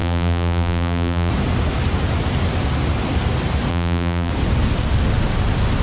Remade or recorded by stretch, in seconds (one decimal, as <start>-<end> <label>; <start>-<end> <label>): 0.0-1.3 remade; 1.3-3.7 recorded; 3.7-4.3 remade; 4.3-5.8 recorded